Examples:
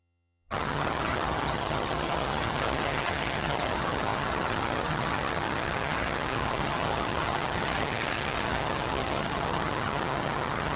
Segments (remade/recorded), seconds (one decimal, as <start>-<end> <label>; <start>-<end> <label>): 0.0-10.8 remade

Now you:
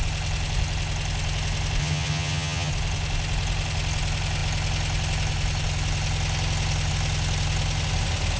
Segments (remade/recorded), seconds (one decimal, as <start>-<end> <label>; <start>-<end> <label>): 0.0-1.8 recorded; 1.8-2.7 remade; 2.7-8.4 recorded

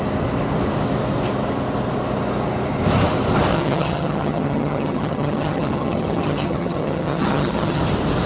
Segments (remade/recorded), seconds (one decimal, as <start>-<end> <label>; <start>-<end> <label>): 0.0-3.5 recorded; 3.5-7.8 remade; 7.8-8.3 recorded

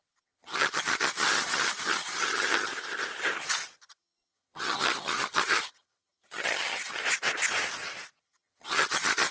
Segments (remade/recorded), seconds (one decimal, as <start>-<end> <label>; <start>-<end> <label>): 0.0-2.7 remade; 2.7-3.5 recorded; 3.5-7.0 remade; 7.0-8.2 recorded; 8.2-9.3 remade